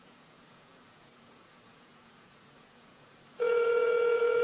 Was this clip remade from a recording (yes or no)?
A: yes